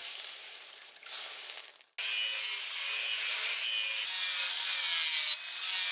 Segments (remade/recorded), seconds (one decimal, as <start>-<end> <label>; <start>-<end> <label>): 0.0-0.9 remade; 0.9-5.9 recorded